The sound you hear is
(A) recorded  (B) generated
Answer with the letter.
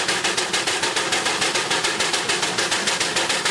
A